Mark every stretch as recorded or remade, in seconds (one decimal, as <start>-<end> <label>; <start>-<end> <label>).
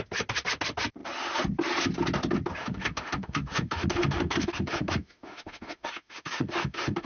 0.0-2.6 recorded; 2.6-7.1 remade